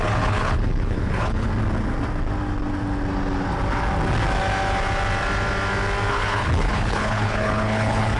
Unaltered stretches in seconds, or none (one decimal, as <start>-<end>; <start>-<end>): 1.5-6.1